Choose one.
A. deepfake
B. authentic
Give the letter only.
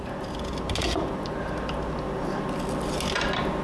B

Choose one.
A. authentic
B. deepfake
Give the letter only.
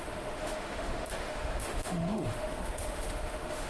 B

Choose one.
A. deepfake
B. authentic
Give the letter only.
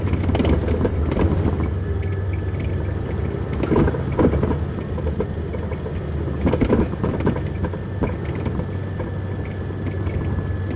B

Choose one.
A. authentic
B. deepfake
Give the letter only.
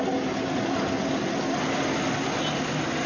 A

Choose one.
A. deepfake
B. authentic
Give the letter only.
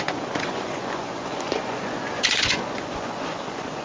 A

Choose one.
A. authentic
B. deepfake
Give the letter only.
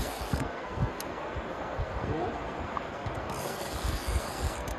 B